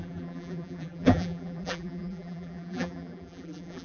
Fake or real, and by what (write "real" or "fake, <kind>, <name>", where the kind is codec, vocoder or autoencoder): fake, vocoder, BigVGAN v2